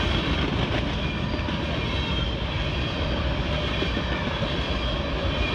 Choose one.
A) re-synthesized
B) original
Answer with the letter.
B